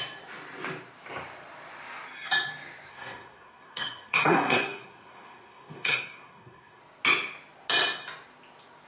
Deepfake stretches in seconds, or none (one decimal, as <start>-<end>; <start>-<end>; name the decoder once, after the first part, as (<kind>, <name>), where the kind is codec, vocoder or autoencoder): 2.9-6.8 (codec, SNAC)